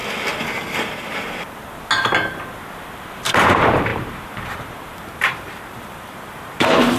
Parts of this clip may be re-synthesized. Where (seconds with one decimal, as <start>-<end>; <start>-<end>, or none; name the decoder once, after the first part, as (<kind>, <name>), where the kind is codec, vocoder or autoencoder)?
3.0-7.0 (vocoder, BigVGAN v2)